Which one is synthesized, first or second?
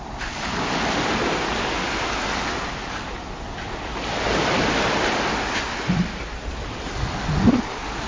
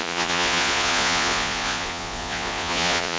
second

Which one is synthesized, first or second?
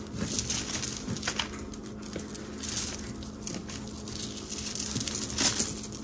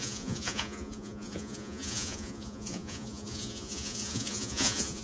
second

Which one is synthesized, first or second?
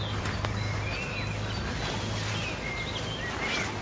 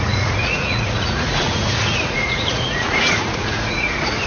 second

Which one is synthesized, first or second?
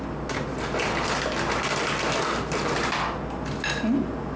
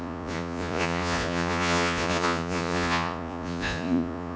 second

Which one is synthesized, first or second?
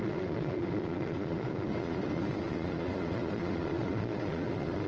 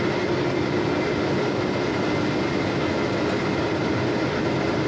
first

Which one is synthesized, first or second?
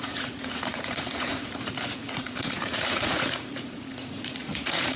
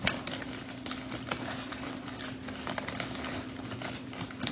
first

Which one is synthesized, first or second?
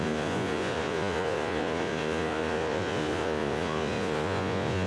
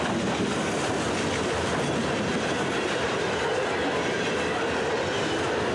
first